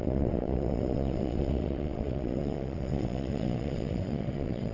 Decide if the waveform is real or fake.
fake